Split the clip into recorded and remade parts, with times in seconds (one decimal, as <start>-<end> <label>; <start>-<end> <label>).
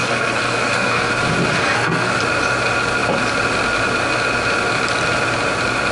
0.0-1.1 remade; 1.1-1.6 recorded; 1.6-2.2 remade; 2.2-5.9 recorded